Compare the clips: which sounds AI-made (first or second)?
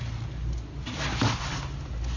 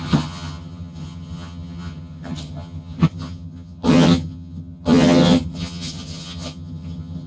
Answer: second